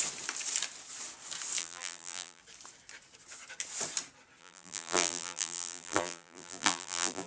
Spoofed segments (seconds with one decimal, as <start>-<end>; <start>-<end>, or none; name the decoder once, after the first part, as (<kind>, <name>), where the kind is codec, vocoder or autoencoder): 1.6-2.4 (vocoder, BigVGAN v2); 4.4-7.3

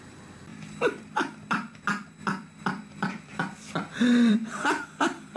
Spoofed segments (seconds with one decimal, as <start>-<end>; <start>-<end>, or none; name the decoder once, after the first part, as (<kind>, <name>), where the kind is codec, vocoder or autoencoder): 0.0-5.4 (vocoder, BigVGAN v2)

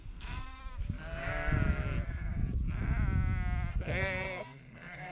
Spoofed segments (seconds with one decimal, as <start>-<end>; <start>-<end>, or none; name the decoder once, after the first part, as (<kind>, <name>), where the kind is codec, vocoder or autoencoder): 0.0-0.6 (codec, SNAC); 3.7-5.1